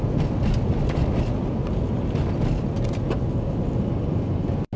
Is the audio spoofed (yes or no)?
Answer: no